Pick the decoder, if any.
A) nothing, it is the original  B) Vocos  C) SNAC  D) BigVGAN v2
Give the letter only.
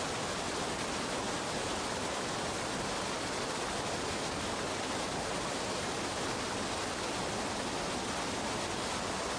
A